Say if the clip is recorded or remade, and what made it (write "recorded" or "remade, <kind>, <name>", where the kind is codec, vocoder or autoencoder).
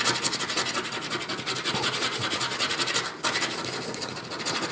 recorded